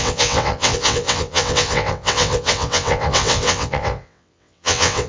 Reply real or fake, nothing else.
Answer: fake